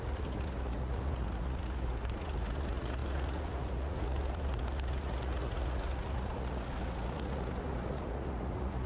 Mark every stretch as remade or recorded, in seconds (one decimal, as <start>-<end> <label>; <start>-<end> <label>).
0.0-8.9 remade